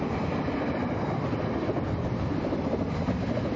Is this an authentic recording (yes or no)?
yes